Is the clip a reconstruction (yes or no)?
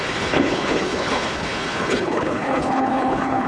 yes